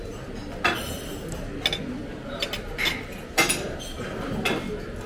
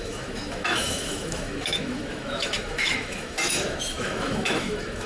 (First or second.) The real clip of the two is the first